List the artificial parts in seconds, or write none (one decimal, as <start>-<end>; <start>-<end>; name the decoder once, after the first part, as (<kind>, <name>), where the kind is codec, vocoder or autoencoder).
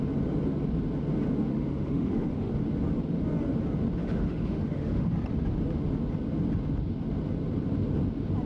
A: 1.5-2.5 (autoencoder, DAC-VAE); 4.0-5.1